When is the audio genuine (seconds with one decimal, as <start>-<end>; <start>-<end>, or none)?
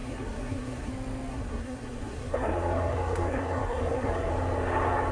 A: 0.9-1.3; 4.3-5.1